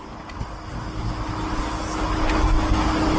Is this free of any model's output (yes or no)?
yes